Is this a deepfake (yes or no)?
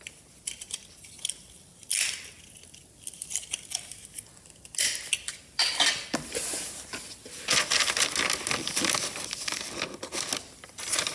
no